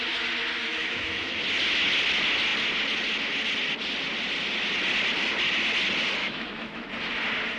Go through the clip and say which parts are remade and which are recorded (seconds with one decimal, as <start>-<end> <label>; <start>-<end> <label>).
0.0-0.6 recorded; 0.6-1.4 remade; 1.4-6.2 recorded; 6.2-6.9 remade; 6.9-7.6 recorded